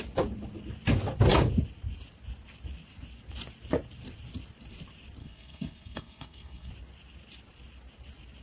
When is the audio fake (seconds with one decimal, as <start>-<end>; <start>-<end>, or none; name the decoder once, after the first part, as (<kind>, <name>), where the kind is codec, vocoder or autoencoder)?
5.2-6.7 (codec, SNAC)